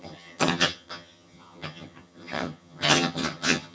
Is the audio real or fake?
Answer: fake